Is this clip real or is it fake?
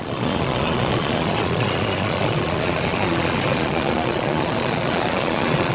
fake